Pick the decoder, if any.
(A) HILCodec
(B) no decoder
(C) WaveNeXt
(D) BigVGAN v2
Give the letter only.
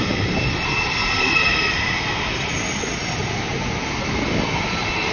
B